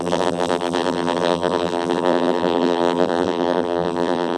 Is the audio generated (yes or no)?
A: yes